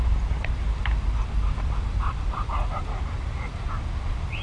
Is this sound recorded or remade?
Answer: recorded